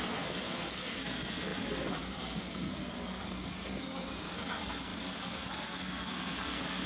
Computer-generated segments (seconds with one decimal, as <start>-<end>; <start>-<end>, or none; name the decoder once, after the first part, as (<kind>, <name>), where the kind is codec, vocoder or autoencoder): 0.0-6.9 (codec, SNAC)